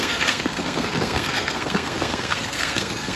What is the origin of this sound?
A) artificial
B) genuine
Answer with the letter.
A